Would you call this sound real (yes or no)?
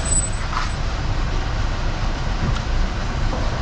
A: no